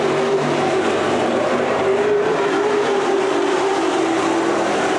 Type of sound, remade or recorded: remade